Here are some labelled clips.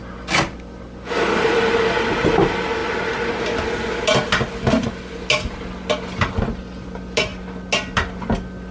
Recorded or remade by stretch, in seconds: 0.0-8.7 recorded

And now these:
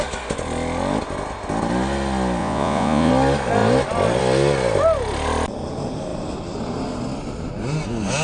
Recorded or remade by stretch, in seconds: 0.0-2.4 recorded; 2.4-3.1 remade; 3.1-8.2 recorded

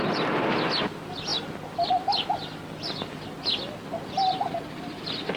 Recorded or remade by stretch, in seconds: 0.0-5.4 recorded

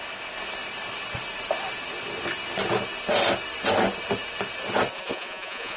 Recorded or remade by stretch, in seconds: 0.0-4.9 recorded; 4.9-5.8 remade